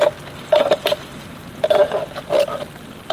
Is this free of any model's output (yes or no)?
yes